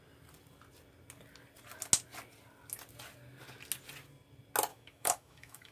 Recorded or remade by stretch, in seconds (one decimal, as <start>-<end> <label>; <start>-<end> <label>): 0.0-4.7 recorded; 4.7-5.7 remade